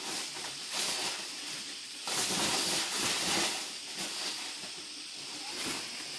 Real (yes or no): yes